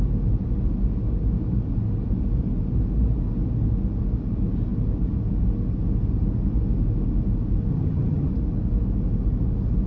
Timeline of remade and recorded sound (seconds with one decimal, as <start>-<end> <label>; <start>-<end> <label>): 0.0-7.7 recorded; 7.7-8.3 remade; 8.3-9.9 recorded